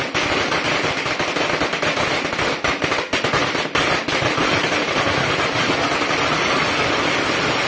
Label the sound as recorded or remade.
recorded